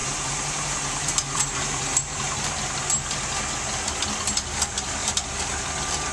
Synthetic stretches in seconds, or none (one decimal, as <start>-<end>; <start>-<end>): 0.0-2.8; 5.0-5.6